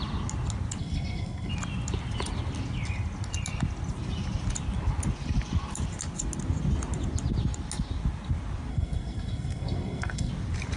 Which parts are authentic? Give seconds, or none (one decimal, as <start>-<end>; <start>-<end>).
0.0-0.8; 1.5-8.7; 10.3-10.8